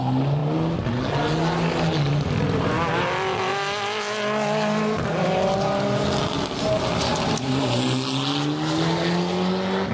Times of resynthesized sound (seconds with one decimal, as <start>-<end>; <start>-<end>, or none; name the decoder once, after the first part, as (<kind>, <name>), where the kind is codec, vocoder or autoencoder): none